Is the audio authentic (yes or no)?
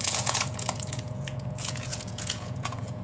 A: no